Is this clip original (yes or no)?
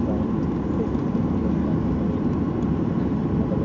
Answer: yes